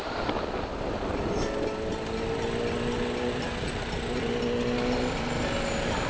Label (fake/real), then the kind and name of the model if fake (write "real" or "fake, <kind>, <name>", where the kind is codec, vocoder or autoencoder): real